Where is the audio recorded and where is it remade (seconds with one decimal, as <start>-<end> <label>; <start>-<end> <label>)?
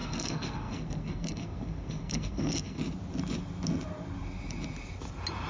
0.0-2.8 remade; 2.8-5.5 recorded